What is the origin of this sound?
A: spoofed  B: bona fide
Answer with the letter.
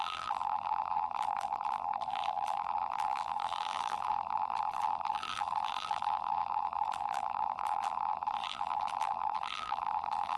A